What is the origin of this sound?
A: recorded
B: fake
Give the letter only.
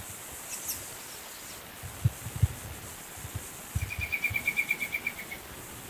A